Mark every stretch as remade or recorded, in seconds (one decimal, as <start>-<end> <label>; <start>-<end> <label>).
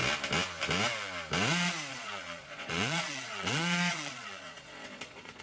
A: 0.0-1.9 recorded; 1.9-5.4 remade